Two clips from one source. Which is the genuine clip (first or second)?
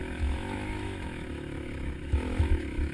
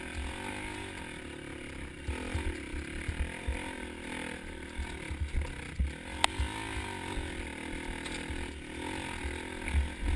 second